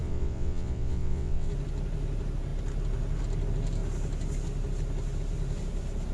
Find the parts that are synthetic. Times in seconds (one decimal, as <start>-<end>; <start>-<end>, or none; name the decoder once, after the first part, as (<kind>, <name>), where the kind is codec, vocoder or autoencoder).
0.0-1.5 (vocoder, WaveNeXt)